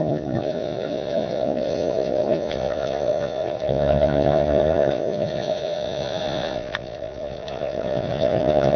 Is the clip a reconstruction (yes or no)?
yes